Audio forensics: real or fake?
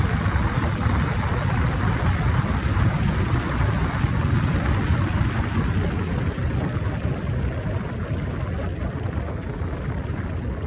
real